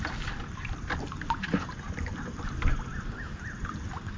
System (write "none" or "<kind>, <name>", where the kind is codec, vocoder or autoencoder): none